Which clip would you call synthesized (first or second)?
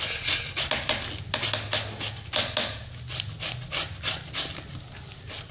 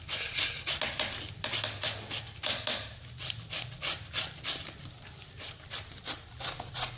second